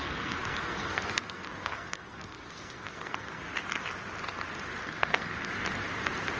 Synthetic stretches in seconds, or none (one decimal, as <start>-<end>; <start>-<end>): 0.0-3.4; 4.8-5.5